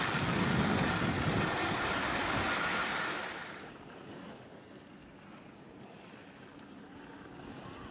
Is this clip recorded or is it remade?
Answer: recorded